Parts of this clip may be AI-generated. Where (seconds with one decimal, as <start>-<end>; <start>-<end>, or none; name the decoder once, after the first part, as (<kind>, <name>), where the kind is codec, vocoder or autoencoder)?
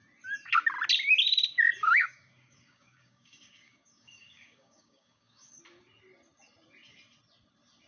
1.8-5.6 (codec, DAC)